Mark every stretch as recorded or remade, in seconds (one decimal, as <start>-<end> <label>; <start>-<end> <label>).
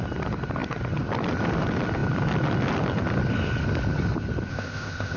0.0-4.5 recorded; 4.5-5.2 remade